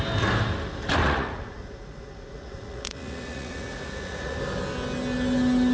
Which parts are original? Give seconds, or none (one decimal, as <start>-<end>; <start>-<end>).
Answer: 0.0-1.0; 4.4-5.7